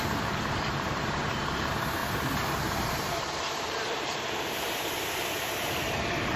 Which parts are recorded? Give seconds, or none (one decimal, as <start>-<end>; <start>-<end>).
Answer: none